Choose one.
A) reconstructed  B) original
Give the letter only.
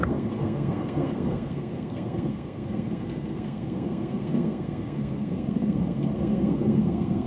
A